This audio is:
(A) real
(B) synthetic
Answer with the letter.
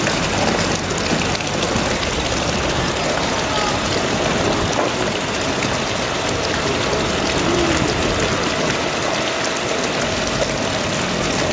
A